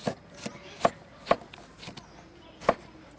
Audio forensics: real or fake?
real